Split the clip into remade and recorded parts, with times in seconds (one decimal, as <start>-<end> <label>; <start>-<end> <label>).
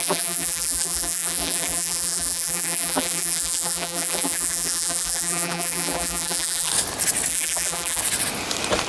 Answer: 0.0-6.7 remade; 6.7-7.3 recorded; 7.3-8.0 remade; 8.0-8.9 recorded